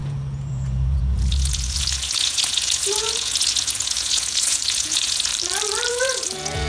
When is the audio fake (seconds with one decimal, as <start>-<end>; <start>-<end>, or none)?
0.0-5.3; 5.9-6.7